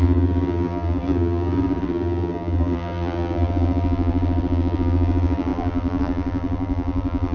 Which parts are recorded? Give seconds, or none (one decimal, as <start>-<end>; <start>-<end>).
none